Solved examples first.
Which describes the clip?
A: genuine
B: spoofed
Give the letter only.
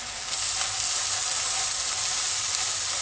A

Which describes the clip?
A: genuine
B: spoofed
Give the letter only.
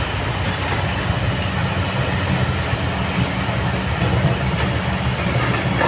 A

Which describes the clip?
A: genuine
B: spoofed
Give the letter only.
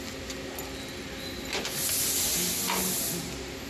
A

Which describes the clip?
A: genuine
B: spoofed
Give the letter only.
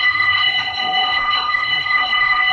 B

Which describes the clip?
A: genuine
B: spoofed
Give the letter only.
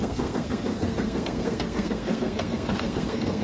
B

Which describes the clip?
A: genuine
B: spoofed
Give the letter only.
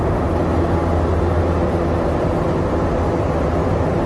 A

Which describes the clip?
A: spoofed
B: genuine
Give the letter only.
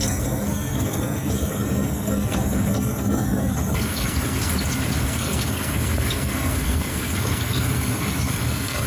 A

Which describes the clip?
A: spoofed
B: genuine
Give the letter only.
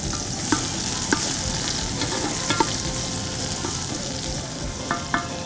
B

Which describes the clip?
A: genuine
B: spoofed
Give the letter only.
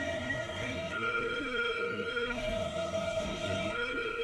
B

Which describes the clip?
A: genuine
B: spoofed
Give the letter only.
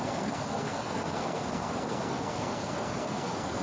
B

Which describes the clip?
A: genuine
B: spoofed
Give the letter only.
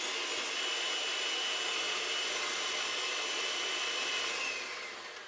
A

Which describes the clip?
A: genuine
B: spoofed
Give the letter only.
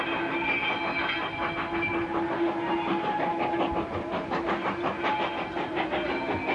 A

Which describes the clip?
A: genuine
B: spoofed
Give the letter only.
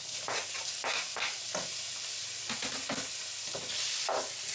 A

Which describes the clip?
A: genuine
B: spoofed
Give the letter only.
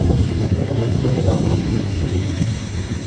B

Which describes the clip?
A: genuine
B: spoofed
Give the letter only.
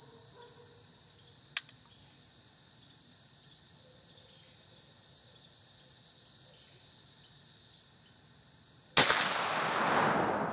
A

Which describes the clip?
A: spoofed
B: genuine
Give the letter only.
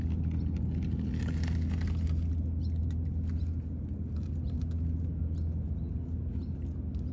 B